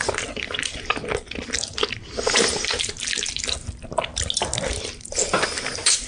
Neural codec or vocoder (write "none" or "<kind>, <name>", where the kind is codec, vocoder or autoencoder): none